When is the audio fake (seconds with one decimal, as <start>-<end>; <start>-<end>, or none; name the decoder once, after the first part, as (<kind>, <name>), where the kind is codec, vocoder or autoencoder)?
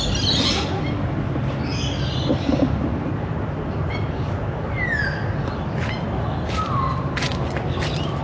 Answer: none